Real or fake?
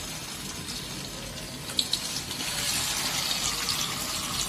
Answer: real